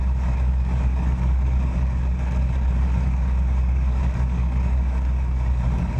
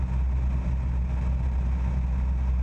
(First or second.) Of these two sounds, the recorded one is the second